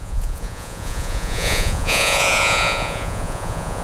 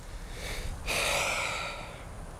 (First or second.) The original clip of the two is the second